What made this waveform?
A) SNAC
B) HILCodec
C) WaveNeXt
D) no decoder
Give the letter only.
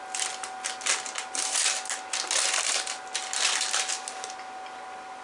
D